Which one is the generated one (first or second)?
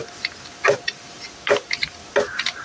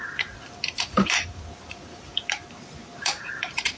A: second